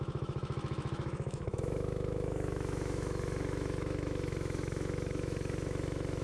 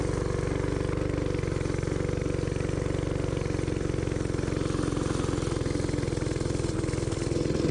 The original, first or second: second